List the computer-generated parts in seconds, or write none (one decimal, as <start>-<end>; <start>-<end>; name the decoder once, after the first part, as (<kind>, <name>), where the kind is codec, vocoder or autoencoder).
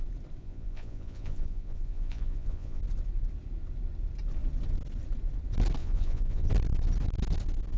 0.4-2.8 (vocoder, Vocos); 5.8-6.5